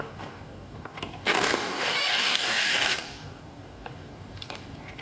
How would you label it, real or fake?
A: fake